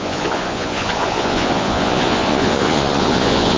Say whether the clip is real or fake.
fake